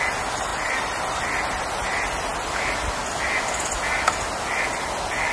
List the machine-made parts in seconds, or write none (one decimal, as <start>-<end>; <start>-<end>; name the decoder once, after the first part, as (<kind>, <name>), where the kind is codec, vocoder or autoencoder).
2.3-4.3 (vocoder, BigVGAN v2)